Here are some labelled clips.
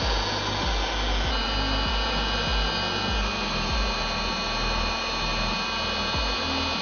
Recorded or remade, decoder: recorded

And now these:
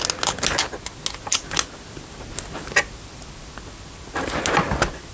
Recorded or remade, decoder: recorded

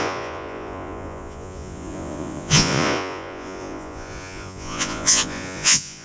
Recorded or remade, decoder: remade, vocoder, Vocos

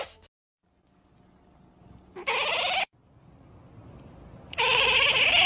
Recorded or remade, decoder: recorded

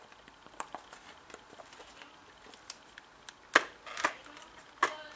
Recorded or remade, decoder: recorded